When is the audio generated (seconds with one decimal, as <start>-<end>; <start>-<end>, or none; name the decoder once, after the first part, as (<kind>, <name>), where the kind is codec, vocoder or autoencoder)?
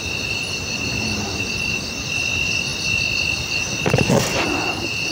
none